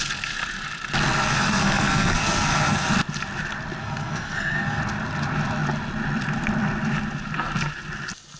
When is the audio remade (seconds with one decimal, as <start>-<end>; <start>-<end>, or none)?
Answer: 1.2-2.9; 3.8-4.8